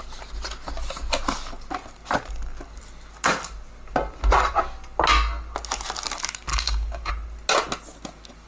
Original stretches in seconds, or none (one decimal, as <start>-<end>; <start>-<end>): 0.0-6.5; 7.1-8.5